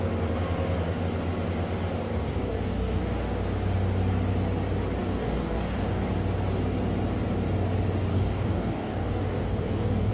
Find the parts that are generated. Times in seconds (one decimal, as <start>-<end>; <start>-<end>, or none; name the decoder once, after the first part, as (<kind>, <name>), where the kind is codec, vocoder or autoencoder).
2.1-3.0 (codec, DAC); 5.0-6.1; 8.1-10.1